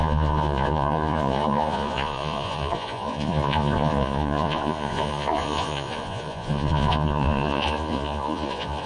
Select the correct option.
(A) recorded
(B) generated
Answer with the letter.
B